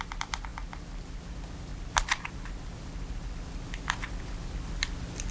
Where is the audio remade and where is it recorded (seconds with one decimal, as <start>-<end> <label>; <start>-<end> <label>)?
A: 0.0-5.3 recorded